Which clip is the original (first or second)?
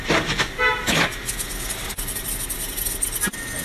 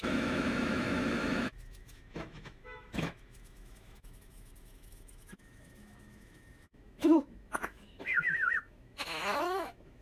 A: first